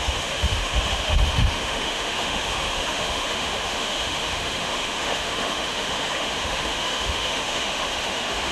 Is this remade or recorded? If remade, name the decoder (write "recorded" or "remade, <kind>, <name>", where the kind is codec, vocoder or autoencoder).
remade, autoencoder, DAC-VAE